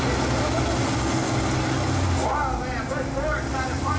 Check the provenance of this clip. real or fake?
real